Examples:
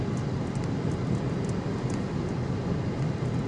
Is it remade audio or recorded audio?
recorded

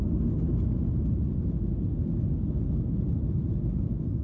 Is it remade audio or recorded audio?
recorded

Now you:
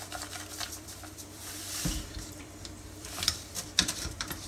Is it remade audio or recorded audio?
remade